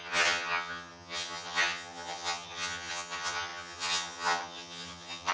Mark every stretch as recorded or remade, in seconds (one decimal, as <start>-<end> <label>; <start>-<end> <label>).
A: 0.0-5.3 remade